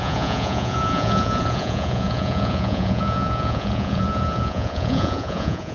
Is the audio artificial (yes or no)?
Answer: yes